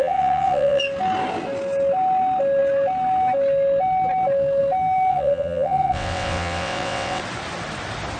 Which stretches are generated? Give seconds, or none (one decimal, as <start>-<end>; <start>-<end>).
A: 0.0-0.8; 5.1-7.2